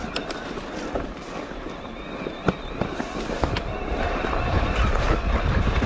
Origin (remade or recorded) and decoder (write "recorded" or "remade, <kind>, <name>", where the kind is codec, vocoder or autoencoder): recorded